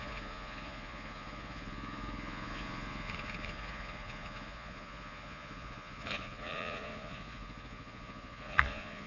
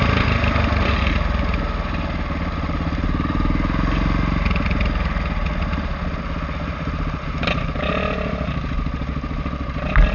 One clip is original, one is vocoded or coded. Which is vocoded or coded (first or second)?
first